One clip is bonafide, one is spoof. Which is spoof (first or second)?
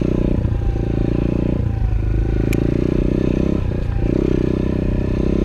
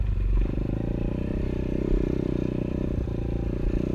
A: second